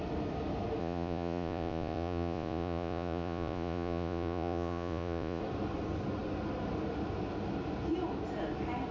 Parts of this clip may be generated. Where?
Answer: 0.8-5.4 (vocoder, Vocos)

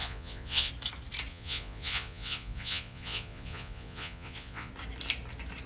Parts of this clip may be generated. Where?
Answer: 0.0-0.7 (vocoder, Vocos); 1.3-4.7

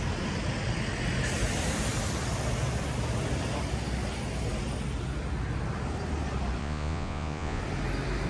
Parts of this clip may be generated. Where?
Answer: 6.6-7.6 (vocoder, Vocos)

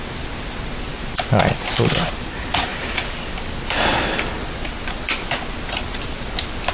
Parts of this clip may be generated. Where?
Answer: none

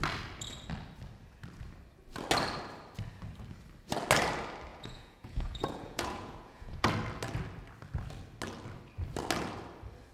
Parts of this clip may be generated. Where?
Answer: 4.7-6.9 (vocoder, Vocos)